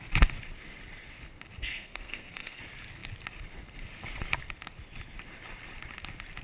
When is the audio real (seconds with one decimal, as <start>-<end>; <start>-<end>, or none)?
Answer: 0.0-1.6; 2.6-6.4